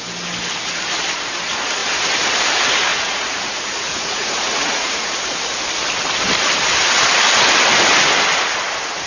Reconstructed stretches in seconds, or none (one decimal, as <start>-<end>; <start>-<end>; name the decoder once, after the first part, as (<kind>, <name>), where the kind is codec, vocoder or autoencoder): 2.9-5.1 (vocoder, Vocos)